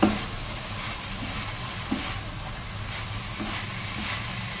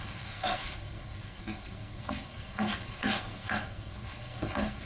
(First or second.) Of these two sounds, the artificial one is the second